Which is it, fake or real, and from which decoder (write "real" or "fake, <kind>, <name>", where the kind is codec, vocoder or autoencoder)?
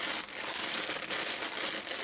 real